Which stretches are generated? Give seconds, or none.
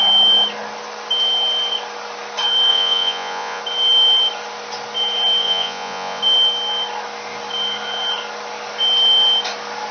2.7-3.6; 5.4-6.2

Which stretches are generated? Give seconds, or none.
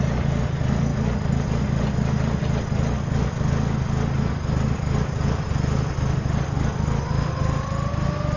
none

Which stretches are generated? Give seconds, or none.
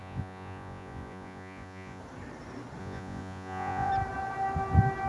0.0-2.0; 2.8-3.9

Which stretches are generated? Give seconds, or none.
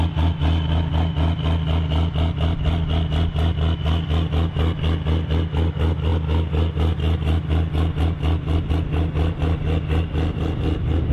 none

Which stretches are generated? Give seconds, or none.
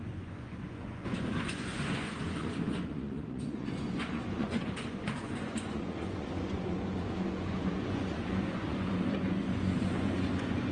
0.0-10.7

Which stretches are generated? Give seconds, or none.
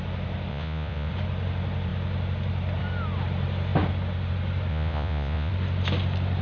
0.5-1.1; 4.7-5.5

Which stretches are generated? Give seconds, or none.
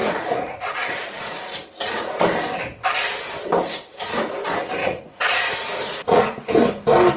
0.0-1.4; 4.8-6.2